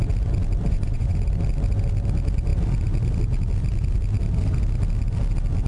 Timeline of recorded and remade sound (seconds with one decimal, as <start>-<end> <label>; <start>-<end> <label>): 0.0-0.7 recorded; 0.7-1.3 remade; 1.3-5.7 recorded